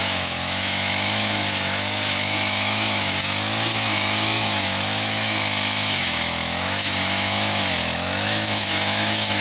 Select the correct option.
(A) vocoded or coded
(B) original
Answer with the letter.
A